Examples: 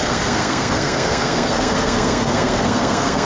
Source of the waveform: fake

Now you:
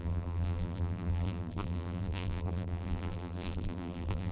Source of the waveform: fake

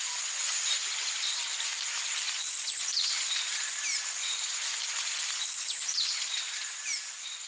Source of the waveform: real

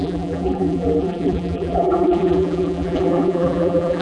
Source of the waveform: fake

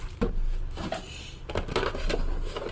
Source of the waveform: real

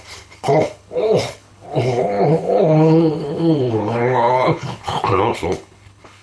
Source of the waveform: fake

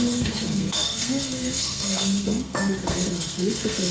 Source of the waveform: fake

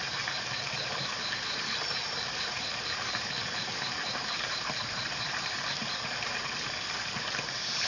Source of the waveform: fake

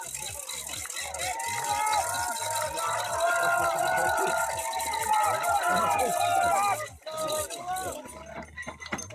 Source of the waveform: real